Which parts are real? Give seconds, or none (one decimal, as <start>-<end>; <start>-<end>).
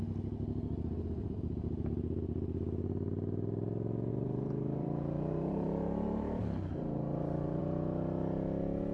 0.0-1.2; 1.9-4.1; 7.6-8.9